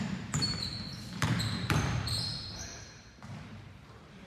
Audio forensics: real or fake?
fake